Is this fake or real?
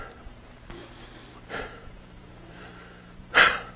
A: fake